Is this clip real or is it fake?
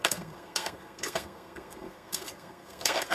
fake